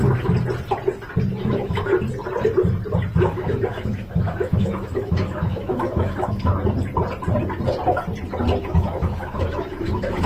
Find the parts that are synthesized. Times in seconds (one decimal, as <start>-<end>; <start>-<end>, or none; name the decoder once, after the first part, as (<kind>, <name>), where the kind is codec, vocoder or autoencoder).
1.4-1.9 (autoencoder, DAC-VAE); 3.2-6.5; 8.6-10.3